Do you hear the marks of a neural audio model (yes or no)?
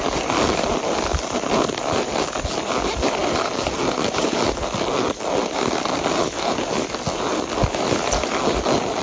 no